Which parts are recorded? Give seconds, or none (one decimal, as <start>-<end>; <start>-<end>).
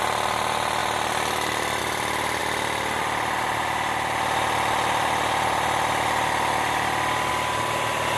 0.0-0.8; 1.8-8.2